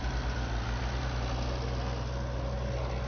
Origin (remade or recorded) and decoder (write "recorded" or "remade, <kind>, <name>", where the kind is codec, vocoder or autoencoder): recorded